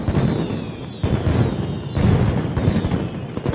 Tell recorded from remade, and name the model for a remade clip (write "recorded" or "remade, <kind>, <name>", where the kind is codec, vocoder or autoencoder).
recorded